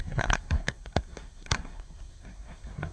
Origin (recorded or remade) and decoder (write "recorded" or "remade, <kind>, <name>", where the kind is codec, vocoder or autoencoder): remade, codec, SNAC